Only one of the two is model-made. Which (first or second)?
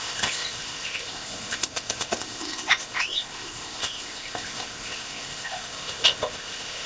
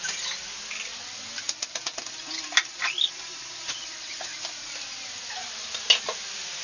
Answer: first